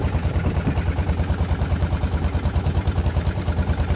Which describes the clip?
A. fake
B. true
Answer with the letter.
A